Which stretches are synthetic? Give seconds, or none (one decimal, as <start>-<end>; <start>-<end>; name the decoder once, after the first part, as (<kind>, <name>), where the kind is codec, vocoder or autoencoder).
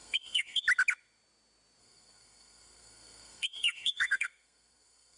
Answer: 0.0-0.6 (codec, SNAC); 1.8-5.2